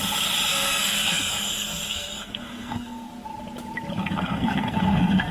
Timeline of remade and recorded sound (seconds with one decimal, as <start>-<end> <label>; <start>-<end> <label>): 0.0-0.5 recorded; 0.5-3.1 remade; 3.1-4.0 recorded; 4.0-5.3 remade